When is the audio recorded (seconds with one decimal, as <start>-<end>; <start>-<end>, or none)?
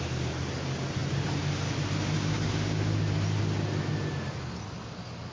0.0-5.3